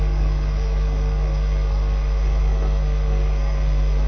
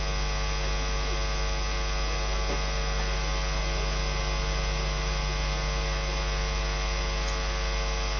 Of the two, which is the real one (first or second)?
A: second